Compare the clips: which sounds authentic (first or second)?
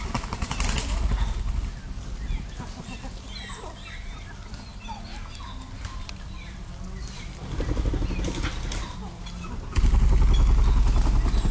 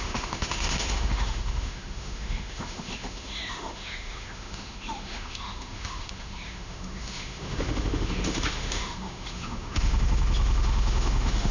first